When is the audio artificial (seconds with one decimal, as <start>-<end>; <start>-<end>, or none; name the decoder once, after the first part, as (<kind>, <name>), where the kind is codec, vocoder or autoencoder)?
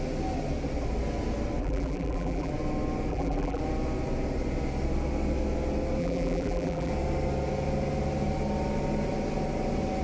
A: 1.6-2.5 (vocoder, BigVGAN v2); 3.1-3.6; 6.0-6.9